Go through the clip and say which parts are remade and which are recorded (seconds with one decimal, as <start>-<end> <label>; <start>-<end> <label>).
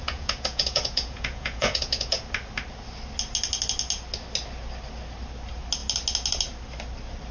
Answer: 0.0-2.2 remade; 2.2-7.3 recorded